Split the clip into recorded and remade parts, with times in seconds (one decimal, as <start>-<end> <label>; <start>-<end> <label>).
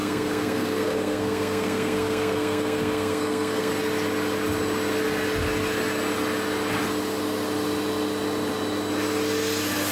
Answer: 0.0-3.7 remade; 3.7-9.9 recorded